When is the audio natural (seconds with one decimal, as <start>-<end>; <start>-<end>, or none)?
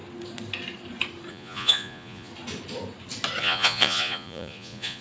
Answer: 0.0-1.3; 2.3-3.4